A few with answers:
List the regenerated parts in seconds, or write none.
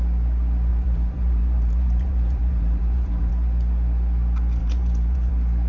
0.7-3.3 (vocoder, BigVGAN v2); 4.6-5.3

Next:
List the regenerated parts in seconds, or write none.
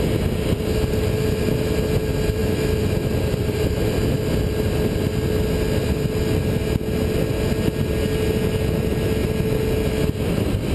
none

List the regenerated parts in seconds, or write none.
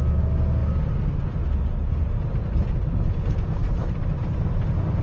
3.6-4.5 (vocoder, BigVGAN v2)